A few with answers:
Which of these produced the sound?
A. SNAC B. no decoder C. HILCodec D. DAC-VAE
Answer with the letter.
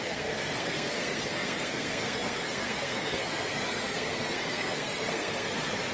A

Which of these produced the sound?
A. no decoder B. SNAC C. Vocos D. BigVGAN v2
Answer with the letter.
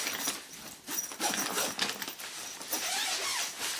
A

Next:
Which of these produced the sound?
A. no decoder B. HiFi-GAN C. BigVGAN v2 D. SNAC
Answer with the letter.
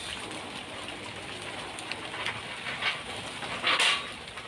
A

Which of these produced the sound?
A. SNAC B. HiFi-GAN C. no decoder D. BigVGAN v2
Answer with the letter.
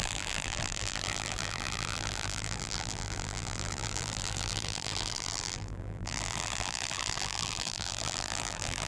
D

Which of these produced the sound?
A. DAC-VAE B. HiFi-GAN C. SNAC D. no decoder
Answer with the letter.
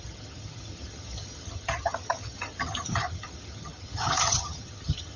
B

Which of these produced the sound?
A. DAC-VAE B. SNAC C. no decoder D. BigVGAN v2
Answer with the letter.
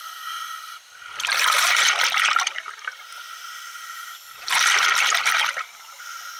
C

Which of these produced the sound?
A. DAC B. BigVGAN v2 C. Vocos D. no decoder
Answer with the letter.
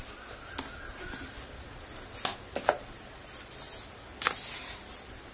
D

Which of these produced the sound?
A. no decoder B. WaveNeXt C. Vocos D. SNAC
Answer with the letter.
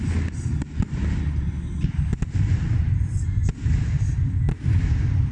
A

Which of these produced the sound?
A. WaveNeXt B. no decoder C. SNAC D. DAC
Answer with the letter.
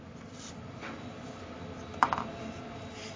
B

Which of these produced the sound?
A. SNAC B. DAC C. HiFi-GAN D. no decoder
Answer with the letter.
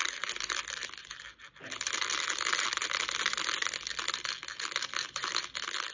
D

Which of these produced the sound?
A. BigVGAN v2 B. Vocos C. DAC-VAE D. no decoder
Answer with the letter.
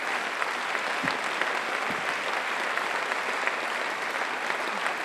D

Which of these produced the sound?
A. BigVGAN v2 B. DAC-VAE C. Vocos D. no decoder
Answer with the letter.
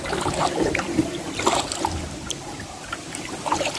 D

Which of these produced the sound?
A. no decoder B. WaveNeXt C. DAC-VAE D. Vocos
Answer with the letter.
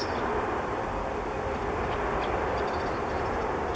A